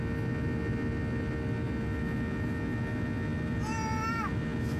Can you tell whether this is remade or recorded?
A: recorded